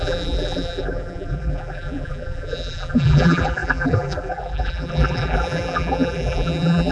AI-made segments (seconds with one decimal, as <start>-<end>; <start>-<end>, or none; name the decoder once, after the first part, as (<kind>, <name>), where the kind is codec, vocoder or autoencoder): 0.0-6.9 (vocoder, BigVGAN v2)